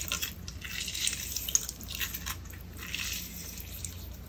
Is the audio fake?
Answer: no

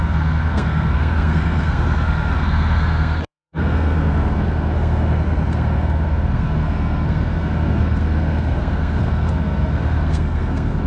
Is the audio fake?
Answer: yes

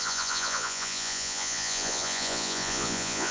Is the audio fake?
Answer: yes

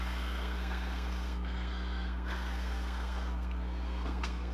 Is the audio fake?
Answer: yes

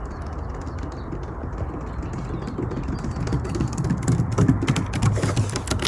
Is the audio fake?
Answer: no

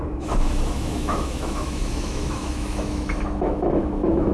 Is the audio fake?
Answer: yes